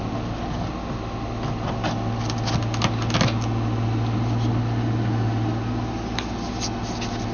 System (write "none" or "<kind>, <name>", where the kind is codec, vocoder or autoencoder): none